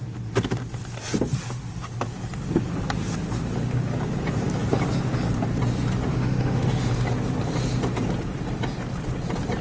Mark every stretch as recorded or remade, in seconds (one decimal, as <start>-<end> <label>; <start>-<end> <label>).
0.0-6.1 recorded; 6.1-6.9 remade; 6.9-9.6 recorded